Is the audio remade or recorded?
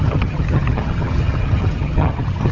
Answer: remade